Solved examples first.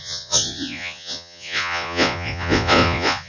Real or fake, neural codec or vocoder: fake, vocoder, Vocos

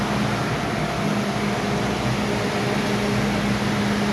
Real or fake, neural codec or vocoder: real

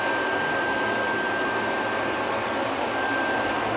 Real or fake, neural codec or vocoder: real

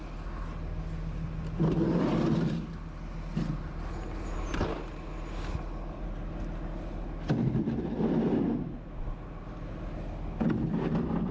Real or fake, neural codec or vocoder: real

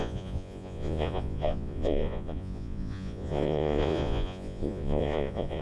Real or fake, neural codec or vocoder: fake, vocoder, Vocos